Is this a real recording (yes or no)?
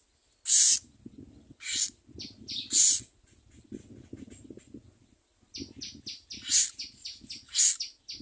yes